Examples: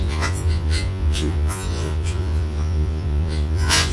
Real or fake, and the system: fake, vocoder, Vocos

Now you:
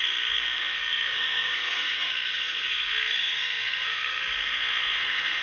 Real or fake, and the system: fake, codec, SNAC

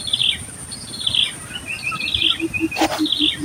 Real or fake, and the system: real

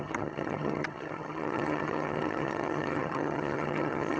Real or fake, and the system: fake, vocoder, HiFi-GAN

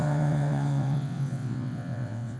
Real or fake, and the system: fake, vocoder, WaveNeXt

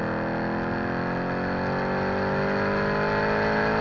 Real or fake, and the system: real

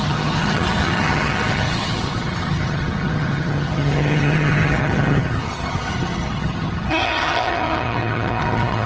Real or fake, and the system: fake, vocoder, HiFi-GAN